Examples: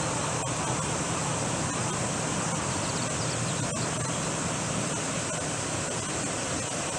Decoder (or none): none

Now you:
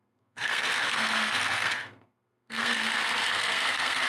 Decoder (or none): codec, SNAC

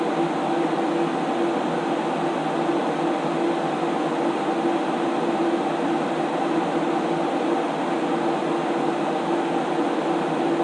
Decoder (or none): none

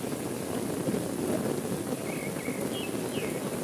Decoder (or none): none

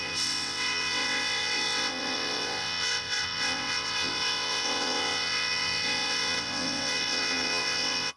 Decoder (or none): vocoder, WaveNeXt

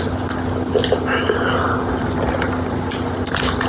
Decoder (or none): none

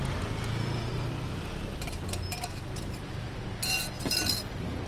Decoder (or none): none